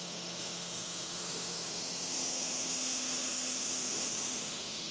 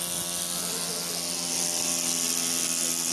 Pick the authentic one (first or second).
second